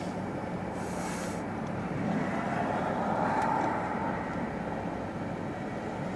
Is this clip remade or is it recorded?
recorded